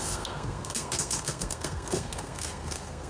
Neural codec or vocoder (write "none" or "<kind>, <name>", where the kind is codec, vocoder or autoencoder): codec, SNAC